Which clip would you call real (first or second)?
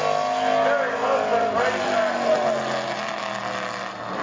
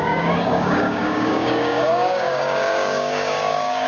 first